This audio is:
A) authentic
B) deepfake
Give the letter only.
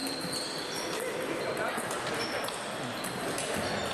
A